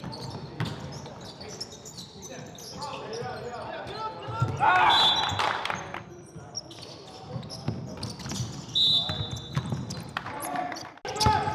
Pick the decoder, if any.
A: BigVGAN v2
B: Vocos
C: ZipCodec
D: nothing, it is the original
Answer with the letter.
D